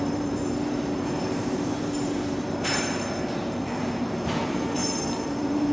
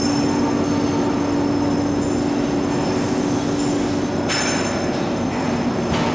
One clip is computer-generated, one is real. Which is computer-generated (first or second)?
first